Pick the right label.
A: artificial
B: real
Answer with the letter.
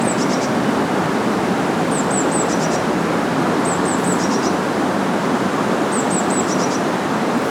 A